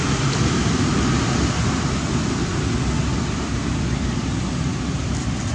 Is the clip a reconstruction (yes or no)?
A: yes